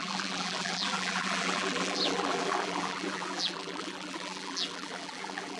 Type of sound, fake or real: fake